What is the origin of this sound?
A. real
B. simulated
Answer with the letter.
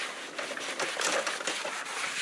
A